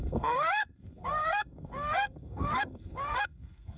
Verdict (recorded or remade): remade